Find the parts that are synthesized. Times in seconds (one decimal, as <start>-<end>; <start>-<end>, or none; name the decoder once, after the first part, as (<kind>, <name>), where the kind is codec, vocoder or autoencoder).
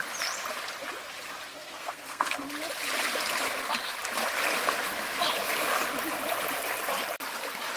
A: 1.5-2.4 (codec, SNAC)